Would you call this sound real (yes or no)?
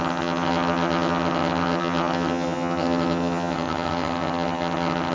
no